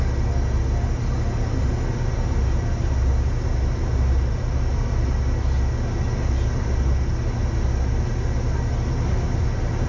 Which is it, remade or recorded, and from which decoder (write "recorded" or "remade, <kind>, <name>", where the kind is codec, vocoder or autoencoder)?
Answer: recorded